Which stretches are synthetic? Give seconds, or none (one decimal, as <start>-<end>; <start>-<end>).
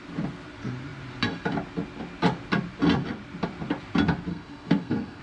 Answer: 4.3-5.2